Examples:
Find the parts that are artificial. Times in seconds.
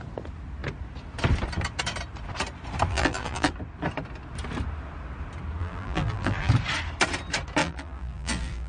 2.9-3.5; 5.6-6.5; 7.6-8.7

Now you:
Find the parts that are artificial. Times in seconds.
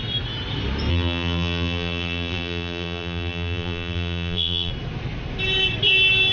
0.9-4.7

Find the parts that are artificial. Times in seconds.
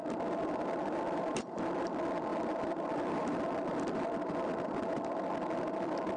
2.3-5.3